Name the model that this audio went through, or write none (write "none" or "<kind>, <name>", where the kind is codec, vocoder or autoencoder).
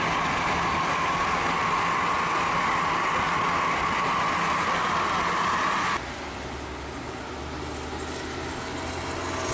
none